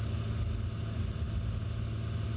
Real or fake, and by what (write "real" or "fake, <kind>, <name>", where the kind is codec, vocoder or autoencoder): real